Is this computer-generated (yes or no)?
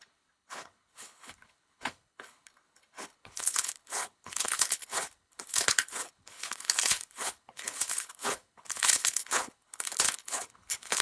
yes